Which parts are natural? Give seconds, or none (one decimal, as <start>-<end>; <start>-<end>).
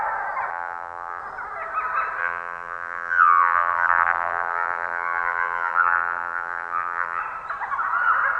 0.0-0.5; 1.2-2.2; 7.2-8.4